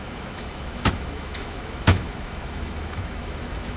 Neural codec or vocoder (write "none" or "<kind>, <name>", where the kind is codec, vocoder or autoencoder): autoencoder, DAC-VAE